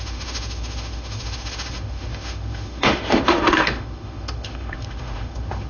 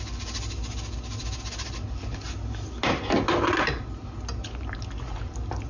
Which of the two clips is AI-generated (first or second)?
first